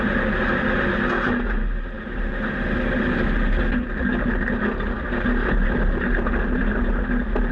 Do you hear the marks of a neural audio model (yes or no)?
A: no